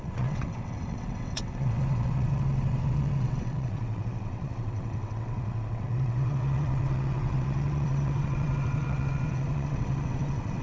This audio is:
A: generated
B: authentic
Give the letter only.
A